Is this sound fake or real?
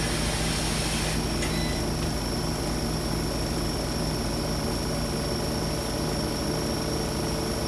real